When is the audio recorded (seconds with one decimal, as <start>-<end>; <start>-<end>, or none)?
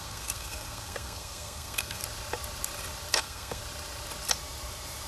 2.0-3.1; 3.6-5.1